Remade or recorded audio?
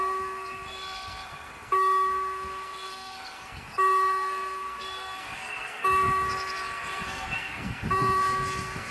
remade